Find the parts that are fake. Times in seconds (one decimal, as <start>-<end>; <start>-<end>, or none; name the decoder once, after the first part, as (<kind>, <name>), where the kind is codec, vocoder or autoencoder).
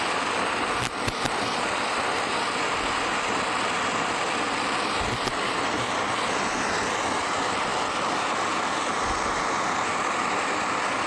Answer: none